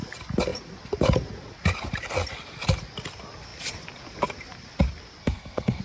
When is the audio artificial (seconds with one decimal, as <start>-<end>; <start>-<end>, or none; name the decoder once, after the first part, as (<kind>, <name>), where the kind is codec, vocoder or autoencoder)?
5.2-5.8 (codec, SNAC)